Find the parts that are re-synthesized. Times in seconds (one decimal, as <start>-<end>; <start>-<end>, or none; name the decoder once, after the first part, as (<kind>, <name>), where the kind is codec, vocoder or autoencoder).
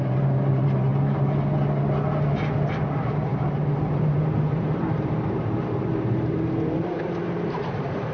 0.0-0.9 (vocoder, BigVGAN v2); 2.7-8.1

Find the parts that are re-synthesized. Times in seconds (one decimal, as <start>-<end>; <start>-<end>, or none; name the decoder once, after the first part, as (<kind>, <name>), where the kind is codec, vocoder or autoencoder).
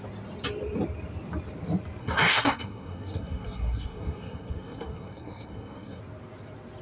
2.0-6.0 (codec, SNAC)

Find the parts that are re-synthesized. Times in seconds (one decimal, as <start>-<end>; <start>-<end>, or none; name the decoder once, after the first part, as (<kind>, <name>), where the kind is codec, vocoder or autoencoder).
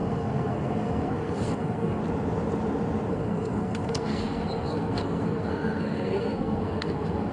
0.0-2.0 (codec, SNAC); 3.1-7.3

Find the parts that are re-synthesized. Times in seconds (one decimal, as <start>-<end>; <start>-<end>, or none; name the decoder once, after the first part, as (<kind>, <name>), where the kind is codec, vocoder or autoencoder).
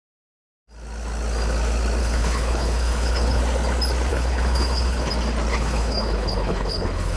2.0-3.4 (codec, HILCodec); 4.1-5.1; 5.5-7.2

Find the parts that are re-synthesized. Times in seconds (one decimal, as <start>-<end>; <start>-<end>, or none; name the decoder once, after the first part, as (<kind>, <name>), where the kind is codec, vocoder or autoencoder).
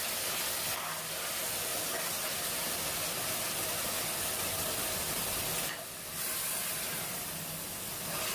1.7-6.2 (vocoder, BigVGAN v2)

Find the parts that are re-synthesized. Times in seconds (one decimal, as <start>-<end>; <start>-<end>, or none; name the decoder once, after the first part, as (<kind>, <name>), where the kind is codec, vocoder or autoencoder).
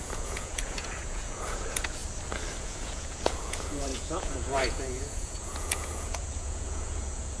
0.0-2.0 (vocoder, Vocos); 2.6-7.4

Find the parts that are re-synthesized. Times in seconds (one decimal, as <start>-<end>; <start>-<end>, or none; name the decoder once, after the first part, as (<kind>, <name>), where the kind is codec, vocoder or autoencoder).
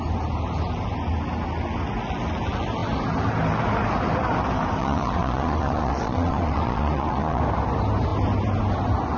4.8-7.4 (vocoder, Vocos)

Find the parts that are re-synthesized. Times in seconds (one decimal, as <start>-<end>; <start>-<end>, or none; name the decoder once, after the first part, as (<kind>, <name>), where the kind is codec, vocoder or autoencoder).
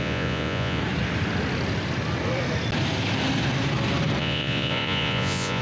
0.0-0.8 (vocoder, Vocos); 4.2-5.6